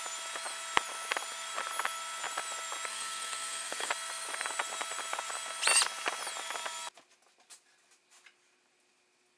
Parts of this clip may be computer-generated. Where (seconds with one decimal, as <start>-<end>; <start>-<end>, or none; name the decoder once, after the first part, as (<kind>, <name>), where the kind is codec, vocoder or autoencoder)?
2.9-3.9 (codec, SNAC)